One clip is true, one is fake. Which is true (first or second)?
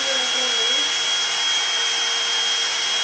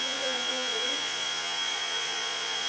first